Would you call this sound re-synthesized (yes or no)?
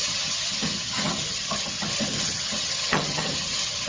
yes